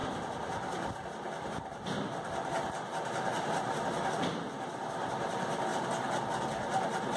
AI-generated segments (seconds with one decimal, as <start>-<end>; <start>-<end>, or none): none